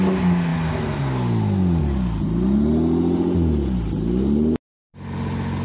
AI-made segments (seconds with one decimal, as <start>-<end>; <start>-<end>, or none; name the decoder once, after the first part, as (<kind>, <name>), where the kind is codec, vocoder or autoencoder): none